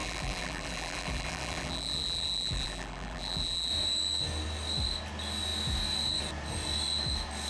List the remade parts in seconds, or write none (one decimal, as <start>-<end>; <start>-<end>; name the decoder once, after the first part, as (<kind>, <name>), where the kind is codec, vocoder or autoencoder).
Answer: 0.0-3.7 (vocoder, BigVGAN v2)